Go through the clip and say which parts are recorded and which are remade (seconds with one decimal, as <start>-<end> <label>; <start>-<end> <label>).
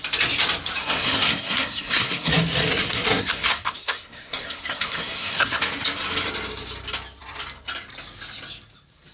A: 0.0-0.8 recorded; 0.8-2.3 remade; 2.3-2.7 recorded; 2.7-5.6 remade; 5.6-9.1 recorded